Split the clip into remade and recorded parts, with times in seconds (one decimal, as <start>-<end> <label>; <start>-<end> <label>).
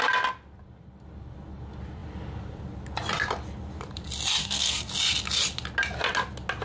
0.0-4.4 recorded; 4.4-4.9 remade; 4.9-6.6 recorded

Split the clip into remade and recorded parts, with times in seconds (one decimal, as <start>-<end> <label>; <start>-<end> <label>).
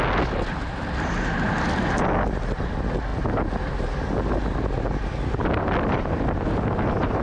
0.0-7.2 recorded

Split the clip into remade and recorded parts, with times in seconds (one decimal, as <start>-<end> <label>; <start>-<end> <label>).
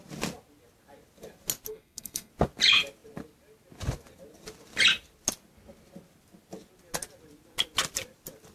0.0-1.7 recorded; 1.7-2.3 remade; 2.3-8.5 recorded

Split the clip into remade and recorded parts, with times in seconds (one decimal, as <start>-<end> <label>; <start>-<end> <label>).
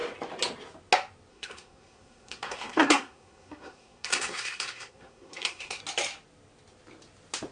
0.0-1.3 recorded; 1.3-5.8 remade; 5.8-7.5 recorded